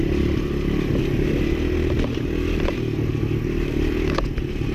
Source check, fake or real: real